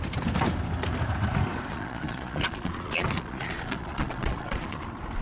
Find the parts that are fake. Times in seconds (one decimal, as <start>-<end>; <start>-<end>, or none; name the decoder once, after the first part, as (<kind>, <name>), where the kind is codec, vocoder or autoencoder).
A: 1.7-4.8 (vocoder, Vocos)